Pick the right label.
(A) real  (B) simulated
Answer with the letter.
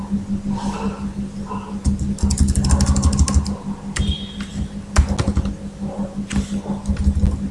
A